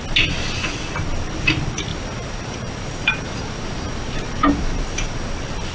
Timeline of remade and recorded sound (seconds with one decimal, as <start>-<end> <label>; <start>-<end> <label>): 0.0-1.9 recorded; 1.9-5.3 remade; 5.3-5.7 recorded